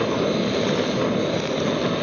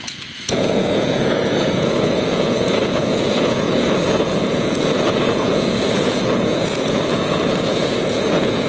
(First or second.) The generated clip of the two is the second